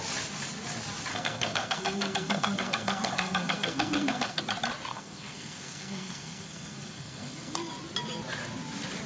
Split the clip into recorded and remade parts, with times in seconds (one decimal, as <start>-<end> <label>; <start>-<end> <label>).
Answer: 0.0-1.1 recorded; 1.1-4.4 remade; 4.4-4.9 recorded; 4.9-7.7 remade; 7.7-9.1 recorded